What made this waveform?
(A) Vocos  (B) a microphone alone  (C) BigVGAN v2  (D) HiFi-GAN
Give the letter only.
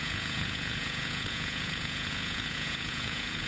A